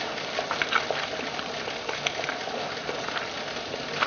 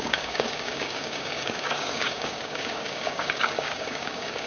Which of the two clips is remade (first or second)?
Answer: second